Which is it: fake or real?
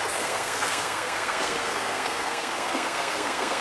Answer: fake